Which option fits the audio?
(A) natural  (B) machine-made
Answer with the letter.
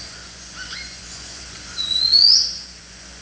B